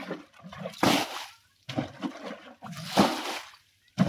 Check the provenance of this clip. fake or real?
real